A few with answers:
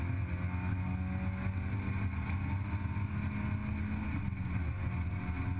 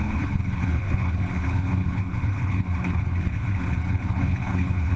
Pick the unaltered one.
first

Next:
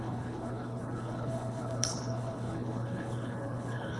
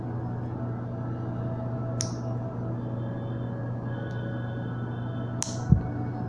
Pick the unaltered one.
second